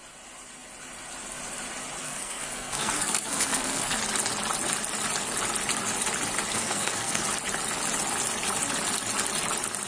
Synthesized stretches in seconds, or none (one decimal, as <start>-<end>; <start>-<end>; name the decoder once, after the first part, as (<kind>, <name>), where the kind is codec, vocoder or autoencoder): 2.0-4.0 (codec, SNAC); 6.5-7.2